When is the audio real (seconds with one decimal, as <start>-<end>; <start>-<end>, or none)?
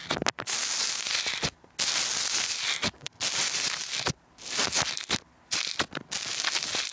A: 0.0-6.9